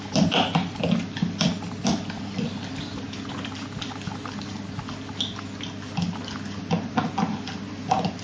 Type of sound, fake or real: real